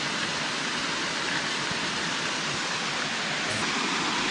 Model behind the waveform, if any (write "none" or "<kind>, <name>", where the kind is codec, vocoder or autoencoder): none